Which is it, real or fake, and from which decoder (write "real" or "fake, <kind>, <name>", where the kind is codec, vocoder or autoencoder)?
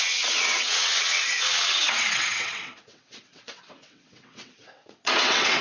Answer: fake, vocoder, WaveNeXt